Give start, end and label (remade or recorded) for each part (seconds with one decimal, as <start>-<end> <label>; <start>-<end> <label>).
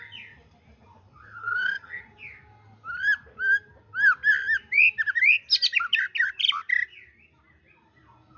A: 0.0-1.4 recorded; 1.4-2.0 remade; 2.0-8.4 recorded